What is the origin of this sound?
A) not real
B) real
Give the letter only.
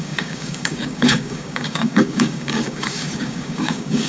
A